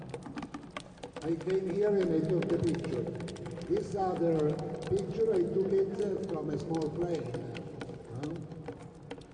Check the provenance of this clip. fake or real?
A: real